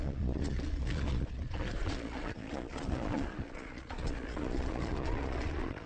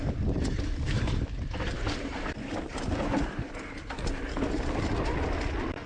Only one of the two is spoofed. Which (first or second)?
first